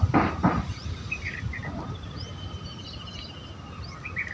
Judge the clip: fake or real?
real